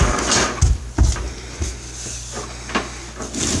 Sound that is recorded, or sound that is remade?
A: recorded